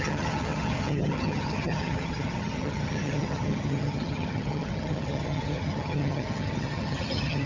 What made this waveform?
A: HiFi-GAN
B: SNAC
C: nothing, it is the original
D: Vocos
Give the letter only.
A